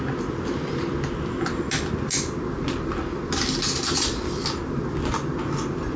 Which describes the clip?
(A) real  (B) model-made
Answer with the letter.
A